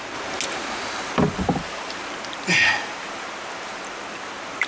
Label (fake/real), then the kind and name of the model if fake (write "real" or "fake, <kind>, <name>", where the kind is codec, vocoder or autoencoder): real